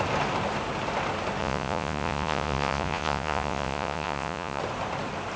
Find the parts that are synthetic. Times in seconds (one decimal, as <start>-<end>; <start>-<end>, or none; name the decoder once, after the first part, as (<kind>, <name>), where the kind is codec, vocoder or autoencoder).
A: 1.4-4.6 (vocoder, Vocos)